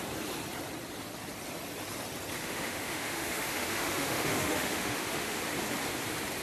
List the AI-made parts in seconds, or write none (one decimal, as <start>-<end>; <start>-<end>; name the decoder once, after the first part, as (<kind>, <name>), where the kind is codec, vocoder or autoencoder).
2.4-5.4 (autoencoder, DAC-VAE)